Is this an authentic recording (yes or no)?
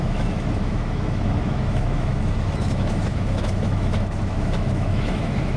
no